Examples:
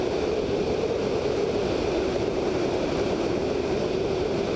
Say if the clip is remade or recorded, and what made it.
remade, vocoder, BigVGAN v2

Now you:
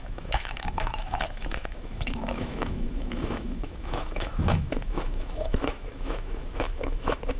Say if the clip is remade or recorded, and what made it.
remade, autoencoder, DAC-VAE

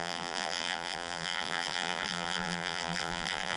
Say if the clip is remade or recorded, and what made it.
remade, vocoder, BigVGAN v2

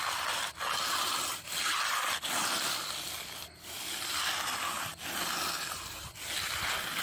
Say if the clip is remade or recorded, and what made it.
recorded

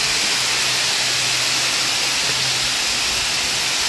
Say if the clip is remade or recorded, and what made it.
recorded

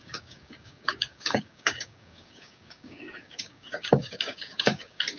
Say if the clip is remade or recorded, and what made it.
remade, codec, DAC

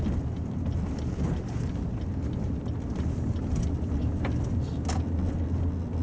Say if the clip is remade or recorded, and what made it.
recorded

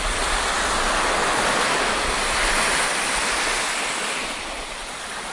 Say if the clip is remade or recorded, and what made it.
recorded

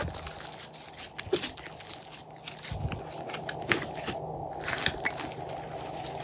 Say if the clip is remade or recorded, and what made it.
recorded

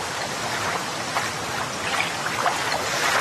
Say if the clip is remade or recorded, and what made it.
recorded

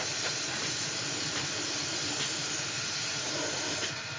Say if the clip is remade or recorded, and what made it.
remade, vocoder, BigVGAN v2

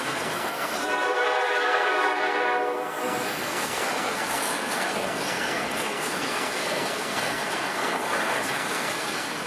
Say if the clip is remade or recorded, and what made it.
remade, codec, SNAC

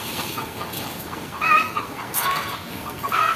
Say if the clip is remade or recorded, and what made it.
remade, codec, SNAC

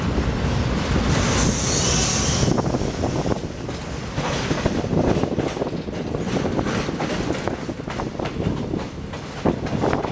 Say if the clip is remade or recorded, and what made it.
recorded